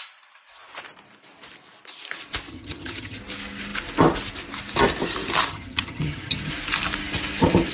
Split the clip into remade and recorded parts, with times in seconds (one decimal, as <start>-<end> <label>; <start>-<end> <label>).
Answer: 0.0-2.5 recorded; 2.5-3.2 remade; 3.2-5.5 recorded; 5.5-6.5 remade; 6.5-7.7 recorded